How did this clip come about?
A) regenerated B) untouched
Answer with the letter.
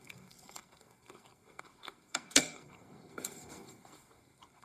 A